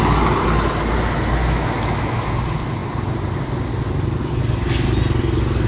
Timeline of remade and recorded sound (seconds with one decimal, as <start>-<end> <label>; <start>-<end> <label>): 0.0-1.4 recorded; 1.4-2.3 remade; 2.3-5.7 recorded